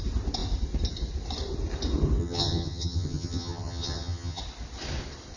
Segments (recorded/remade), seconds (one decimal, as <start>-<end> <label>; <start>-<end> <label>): 0.0-2.2 recorded; 2.2-4.4 remade; 4.4-5.4 recorded